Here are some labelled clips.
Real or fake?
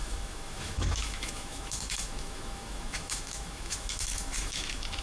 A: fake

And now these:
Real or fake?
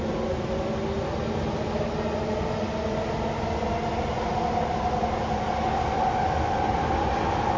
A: real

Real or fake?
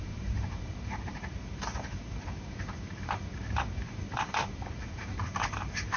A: fake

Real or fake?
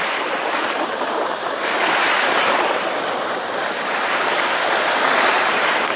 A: fake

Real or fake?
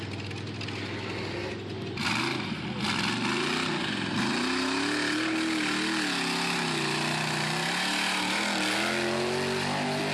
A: real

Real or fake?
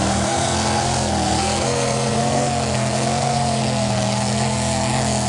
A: fake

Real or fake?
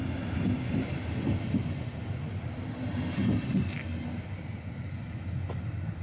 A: real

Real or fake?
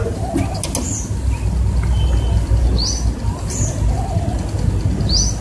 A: real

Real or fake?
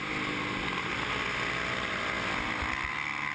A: real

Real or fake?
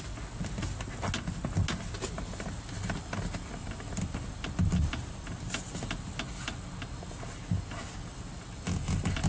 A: real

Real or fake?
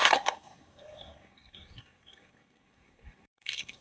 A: fake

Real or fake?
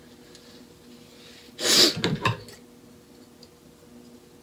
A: real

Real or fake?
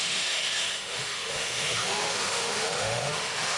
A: fake